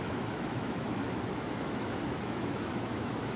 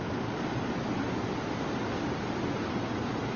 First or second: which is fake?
first